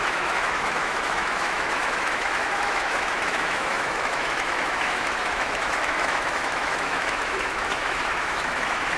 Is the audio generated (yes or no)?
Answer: yes